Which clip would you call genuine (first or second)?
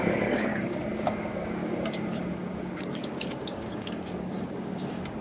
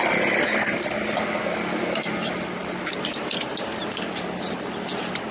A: second